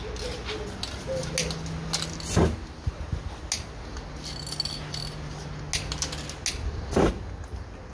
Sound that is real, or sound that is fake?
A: real